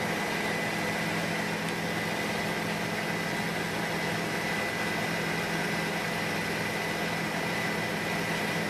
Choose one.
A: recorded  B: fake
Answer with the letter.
A